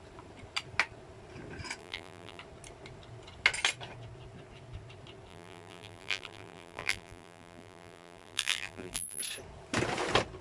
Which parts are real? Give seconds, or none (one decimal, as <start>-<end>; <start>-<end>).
0.0-1.8; 2.4-5.3; 9.2-10.4